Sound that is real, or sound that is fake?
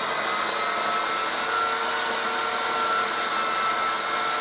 real